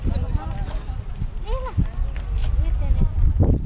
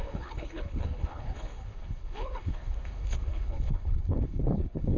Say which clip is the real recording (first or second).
first